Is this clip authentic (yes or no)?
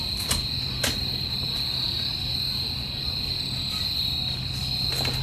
yes